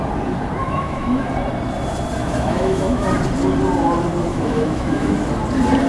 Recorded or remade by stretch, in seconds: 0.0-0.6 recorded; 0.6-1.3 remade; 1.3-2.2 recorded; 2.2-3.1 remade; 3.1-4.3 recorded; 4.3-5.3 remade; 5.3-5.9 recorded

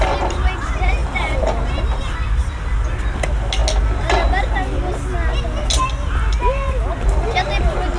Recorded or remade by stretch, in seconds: 0.0-8.0 recorded

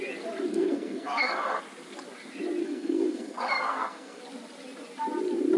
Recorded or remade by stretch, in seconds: 0.0-0.5 recorded; 0.5-1.6 remade; 1.6-2.6 recorded; 2.6-4.2 remade; 4.2-5.6 recorded

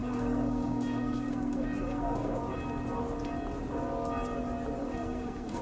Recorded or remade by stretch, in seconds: 0.0-2.4 remade; 2.4-4.8 recorded; 4.8-5.6 remade

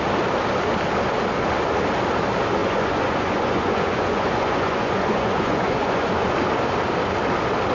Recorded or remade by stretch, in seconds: 0.0-2.6 recorded; 2.6-6.1 remade; 6.1-7.7 recorded

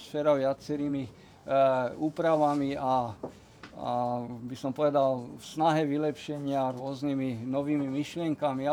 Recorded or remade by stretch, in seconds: 0.0-1.4 recorded; 1.4-3.2 remade; 3.2-5.5 recorded; 5.5-6.8 remade; 6.8-8.7 recorded

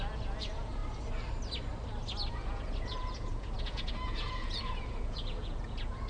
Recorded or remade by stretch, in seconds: 0.0-0.8 remade; 0.8-2.3 recorded; 2.3-6.1 remade

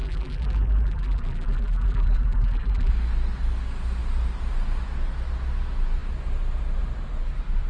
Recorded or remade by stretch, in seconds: 0.0-2.9 remade; 2.9-7.7 recorded